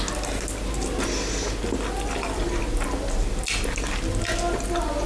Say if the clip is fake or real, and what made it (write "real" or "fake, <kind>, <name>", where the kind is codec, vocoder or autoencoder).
real